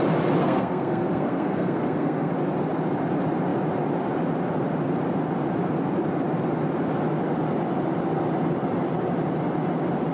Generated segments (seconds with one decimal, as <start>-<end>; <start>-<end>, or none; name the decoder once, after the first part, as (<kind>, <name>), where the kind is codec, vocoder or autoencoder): 0.4-2.3 (codec, SNAC)